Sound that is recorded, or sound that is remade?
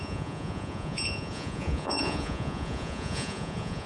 remade